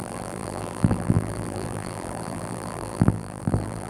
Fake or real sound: fake